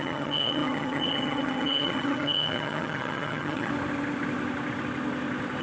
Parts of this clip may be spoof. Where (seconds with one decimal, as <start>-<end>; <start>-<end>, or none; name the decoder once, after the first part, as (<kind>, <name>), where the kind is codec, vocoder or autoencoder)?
0.0-3.7 (vocoder, HiFi-GAN)